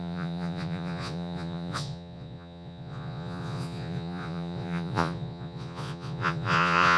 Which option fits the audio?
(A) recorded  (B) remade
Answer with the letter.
B